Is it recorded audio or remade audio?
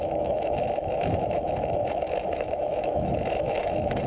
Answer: remade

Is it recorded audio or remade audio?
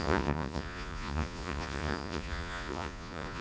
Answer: remade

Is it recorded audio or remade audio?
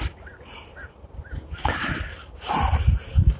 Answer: recorded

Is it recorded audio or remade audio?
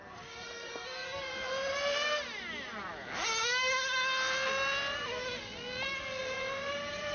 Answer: recorded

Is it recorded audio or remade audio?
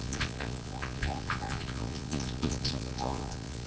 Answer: remade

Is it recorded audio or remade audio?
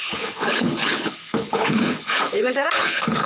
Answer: remade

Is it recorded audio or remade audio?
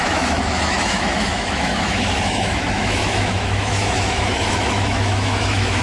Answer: remade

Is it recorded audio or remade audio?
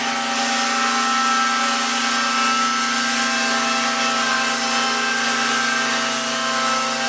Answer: recorded